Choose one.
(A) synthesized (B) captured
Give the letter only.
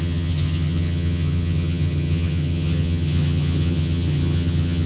A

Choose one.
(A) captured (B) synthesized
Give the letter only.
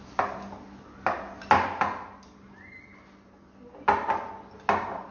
A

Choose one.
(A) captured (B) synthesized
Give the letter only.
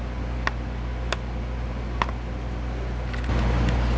A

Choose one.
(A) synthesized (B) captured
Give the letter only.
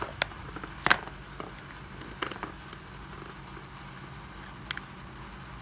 B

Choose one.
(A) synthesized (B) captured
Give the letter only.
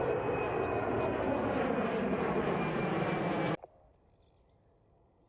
B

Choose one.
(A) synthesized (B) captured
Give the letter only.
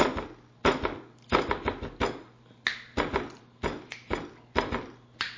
B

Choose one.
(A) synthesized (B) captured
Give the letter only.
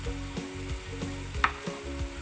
B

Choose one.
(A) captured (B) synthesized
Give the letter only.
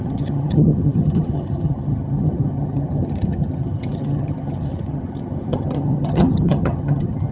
B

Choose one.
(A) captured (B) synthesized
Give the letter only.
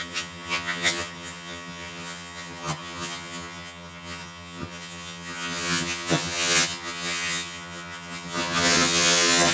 B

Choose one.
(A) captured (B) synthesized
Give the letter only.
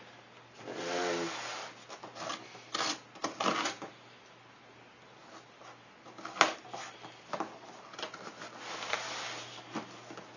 A